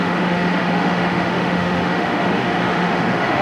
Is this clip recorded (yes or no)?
no